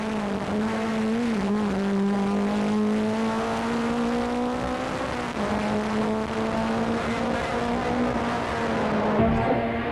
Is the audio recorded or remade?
recorded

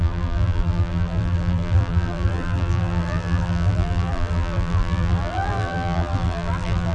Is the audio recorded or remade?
remade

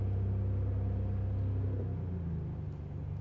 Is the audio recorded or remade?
recorded